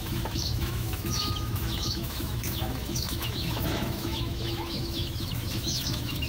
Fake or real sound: fake